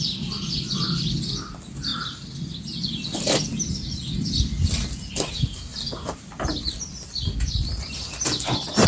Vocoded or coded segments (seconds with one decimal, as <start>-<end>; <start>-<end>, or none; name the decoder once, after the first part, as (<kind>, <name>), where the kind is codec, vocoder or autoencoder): 0.0-1.9 (vocoder, BigVGAN v2); 2.5-3.5; 4.1-5.7; 6.8-8.9

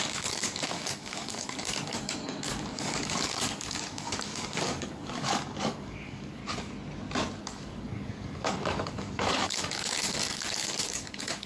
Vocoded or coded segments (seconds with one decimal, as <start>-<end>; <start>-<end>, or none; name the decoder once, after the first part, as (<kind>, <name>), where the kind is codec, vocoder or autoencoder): 0.0-6.4 (codec, DAC); 7.4-11.5

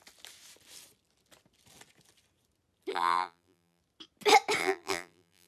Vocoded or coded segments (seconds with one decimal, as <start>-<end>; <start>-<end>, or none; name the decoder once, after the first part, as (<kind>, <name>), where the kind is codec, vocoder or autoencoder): 2.9-3.8 (vocoder, BigVGAN v2); 4.6-5.5

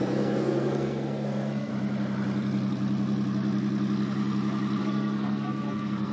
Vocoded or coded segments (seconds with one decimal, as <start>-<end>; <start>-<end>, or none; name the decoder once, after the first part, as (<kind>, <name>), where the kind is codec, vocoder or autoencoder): 0.0-1.7 (codec, SNAC); 4.8-6.1

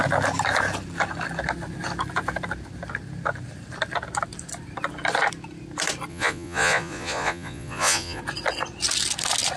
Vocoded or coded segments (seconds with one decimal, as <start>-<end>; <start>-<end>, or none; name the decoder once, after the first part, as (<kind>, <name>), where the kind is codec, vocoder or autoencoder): 6.1-8.2 (vocoder, Vocos)

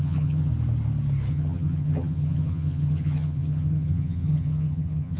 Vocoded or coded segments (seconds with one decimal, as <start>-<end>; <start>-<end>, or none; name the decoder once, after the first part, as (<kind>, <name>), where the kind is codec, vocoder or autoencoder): 0.0-0.5 (vocoder, HiFi-GAN); 1.3-5.2